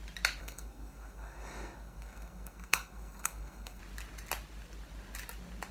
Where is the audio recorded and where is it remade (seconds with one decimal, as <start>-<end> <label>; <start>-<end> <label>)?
0.0-0.4 recorded; 0.4-3.8 remade; 3.8-5.7 recorded